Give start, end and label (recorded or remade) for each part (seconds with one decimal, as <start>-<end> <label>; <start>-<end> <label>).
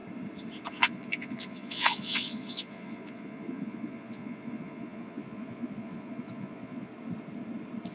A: 0.0-0.7 recorded; 0.7-6.9 remade; 6.9-7.9 recorded